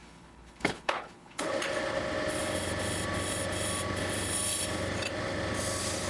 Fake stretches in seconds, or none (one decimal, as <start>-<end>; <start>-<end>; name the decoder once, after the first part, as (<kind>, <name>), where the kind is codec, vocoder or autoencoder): 0.0-1.5 (codec, HILCodec)